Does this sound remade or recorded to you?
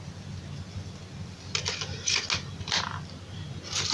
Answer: recorded